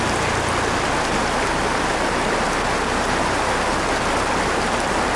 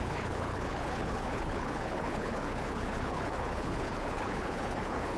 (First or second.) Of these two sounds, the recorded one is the first